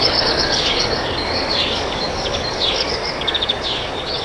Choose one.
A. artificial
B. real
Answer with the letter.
A